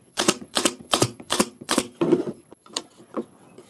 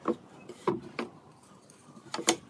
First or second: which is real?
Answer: second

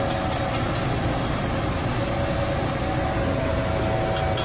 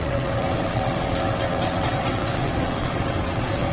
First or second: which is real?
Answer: first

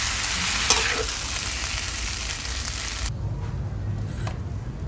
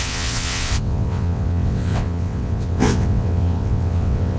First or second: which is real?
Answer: first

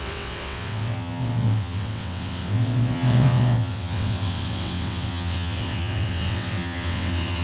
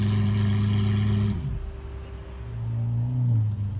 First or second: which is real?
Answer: second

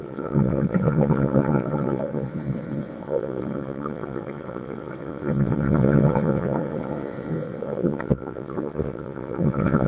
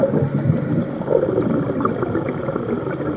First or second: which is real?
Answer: second